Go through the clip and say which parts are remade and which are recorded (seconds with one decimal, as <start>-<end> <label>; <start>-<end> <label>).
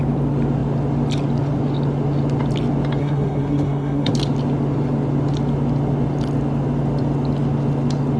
0.0-3.0 recorded; 3.0-4.1 remade; 4.1-8.2 recorded